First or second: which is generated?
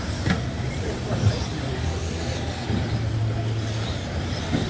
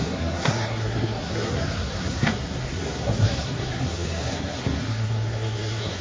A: second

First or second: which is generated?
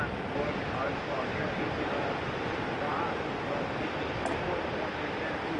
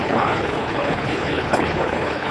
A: second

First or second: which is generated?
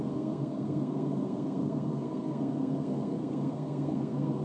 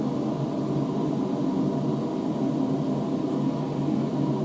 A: first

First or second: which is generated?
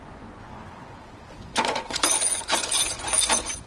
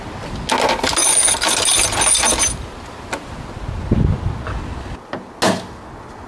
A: first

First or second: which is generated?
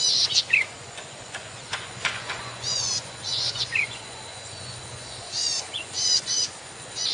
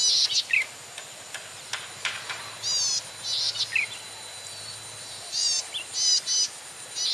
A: first